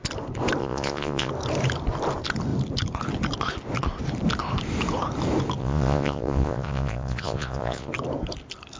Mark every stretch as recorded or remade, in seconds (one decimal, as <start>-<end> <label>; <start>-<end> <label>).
0.0-0.6 recorded; 0.6-1.3 remade; 1.3-5.6 recorded; 5.6-7.9 remade; 7.9-8.8 recorded